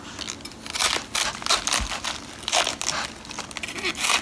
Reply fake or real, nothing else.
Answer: real